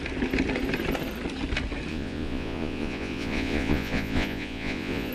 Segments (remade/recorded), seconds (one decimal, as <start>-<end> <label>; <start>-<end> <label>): 0.0-1.9 recorded; 1.9-5.1 remade